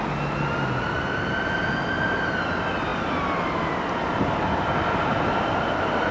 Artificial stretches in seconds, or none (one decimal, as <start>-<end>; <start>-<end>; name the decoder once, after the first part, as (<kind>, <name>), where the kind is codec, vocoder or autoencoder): none